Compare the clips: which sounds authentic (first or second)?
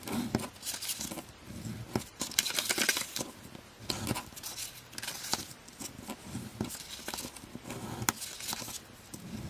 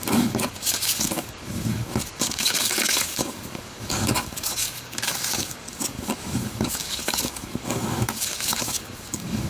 first